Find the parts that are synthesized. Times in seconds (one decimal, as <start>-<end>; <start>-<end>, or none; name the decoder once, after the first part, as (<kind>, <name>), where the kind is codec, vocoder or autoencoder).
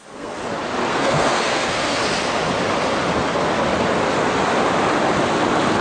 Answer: 0.0-0.4 (codec, SNAC); 0.9-2.0